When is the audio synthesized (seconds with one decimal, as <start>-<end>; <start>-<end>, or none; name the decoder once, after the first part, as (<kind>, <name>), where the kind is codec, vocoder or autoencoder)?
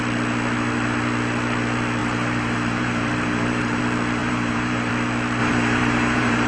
2.0-3.8 (vocoder, BigVGAN v2); 4.2-4.9; 5.4-6.5